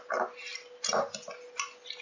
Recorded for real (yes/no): yes